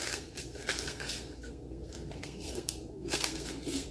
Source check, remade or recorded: remade